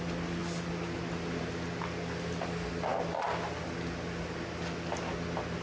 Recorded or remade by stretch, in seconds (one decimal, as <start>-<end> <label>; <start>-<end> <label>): 0.0-5.6 recorded